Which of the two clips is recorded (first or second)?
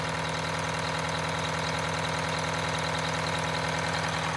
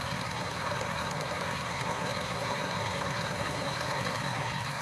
first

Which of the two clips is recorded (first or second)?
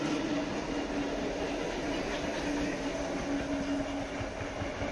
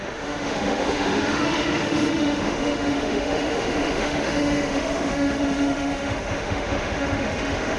first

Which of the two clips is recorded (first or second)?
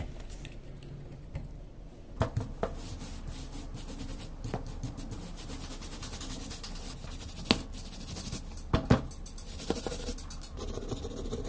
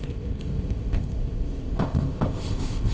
first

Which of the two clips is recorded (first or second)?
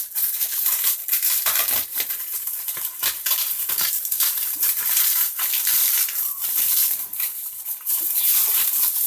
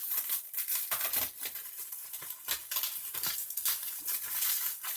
second